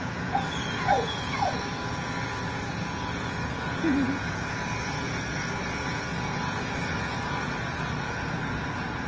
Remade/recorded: remade